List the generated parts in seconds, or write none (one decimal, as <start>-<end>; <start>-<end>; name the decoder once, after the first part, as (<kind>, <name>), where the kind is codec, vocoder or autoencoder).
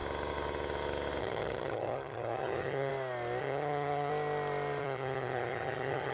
1.2-2.9 (vocoder, HiFi-GAN); 3.4-4.1; 4.8-6.1